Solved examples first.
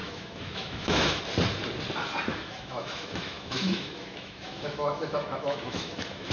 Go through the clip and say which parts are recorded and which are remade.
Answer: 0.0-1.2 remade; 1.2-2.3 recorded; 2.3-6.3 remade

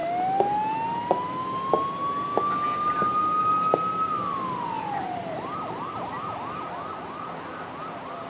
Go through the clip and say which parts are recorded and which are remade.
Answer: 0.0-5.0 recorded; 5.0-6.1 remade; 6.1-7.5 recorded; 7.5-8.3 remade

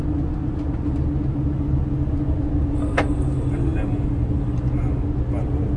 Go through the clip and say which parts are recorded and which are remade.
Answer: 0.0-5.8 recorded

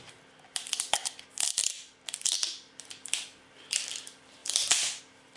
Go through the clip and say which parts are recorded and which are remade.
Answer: 0.0-4.4 recorded; 4.4-5.0 remade; 5.0-5.4 recorded

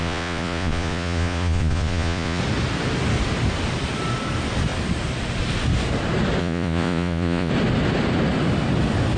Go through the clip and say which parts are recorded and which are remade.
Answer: 0.0-2.4 remade; 2.4-6.4 recorded; 6.4-7.5 remade; 7.5-9.2 recorded

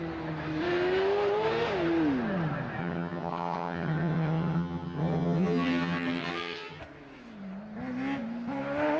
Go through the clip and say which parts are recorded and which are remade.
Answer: 0.0-2.8 recorded; 2.8-6.8 remade; 6.8-9.0 recorded

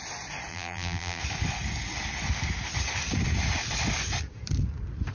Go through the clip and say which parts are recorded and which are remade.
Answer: 0.0-0.5 recorded; 0.5-1.2 remade; 1.2-5.1 recorded

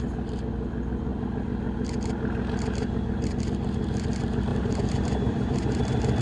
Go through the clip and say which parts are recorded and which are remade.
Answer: 0.0-4.5 recorded; 4.5-5.8 remade; 5.8-6.2 recorded